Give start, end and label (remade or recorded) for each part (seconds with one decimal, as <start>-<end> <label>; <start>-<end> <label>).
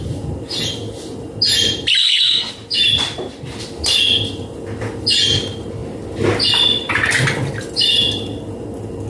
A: 0.0-2.0 recorded; 2.0-2.5 remade; 2.5-9.1 recorded